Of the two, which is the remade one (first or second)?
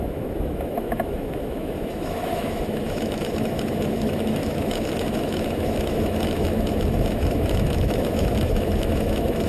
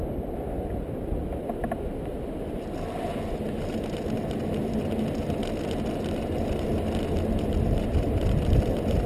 first